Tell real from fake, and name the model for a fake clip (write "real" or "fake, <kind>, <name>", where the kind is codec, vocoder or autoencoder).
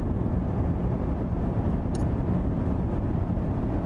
fake, vocoder, BigVGAN v2